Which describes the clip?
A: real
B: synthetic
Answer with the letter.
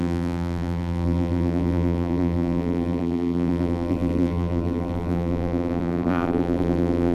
B